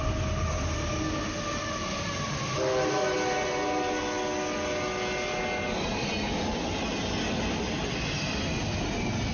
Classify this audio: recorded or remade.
recorded